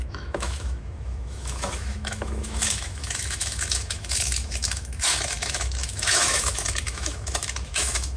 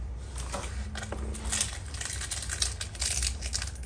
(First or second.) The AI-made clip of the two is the first